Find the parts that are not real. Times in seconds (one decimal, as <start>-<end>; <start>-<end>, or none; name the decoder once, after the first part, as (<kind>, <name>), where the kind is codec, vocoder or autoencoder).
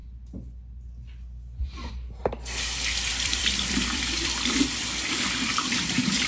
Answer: 3.1-5.8 (vocoder, BigVGAN v2)